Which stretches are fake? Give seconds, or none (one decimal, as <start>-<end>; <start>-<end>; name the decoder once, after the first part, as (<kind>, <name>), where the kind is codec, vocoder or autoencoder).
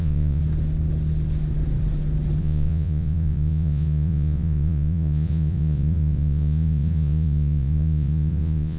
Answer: 0.0-0.4 (vocoder, Vocos); 2.4-8.8